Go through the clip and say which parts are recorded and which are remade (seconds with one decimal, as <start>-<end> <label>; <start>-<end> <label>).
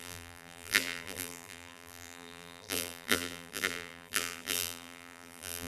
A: 0.0-5.7 remade